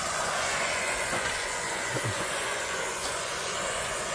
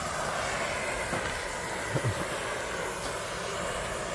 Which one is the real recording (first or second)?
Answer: second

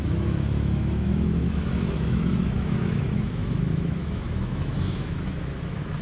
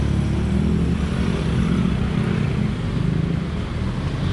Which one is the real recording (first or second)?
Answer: second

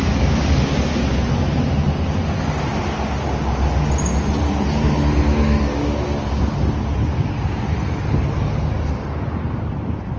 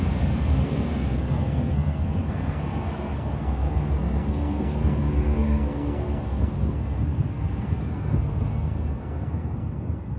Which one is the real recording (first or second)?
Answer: first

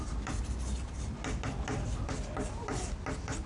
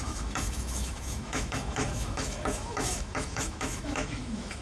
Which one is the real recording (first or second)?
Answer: first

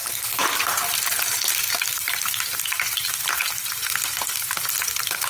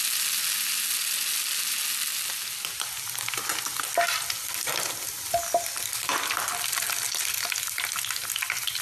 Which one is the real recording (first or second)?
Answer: second